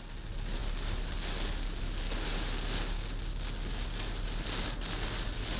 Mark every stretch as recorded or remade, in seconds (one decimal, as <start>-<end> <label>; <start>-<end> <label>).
0.0-5.6 recorded